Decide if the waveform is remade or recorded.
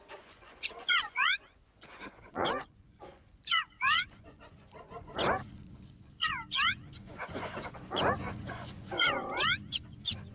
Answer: remade